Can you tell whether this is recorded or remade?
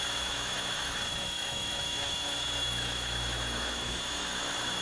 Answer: remade